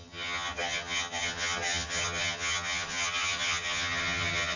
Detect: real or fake fake